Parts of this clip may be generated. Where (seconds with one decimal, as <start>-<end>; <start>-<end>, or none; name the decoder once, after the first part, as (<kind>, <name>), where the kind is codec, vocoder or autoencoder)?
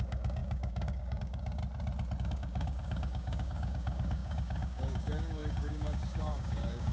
0.0-1.6 (codec, DAC); 2.2-6.9